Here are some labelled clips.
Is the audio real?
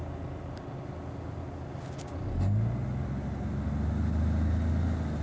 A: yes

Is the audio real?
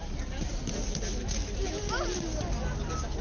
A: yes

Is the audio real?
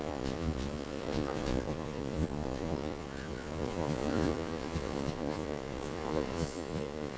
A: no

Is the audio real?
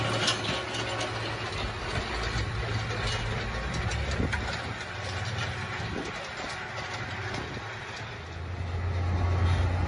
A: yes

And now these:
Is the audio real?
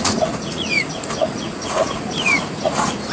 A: no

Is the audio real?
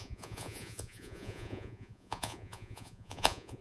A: no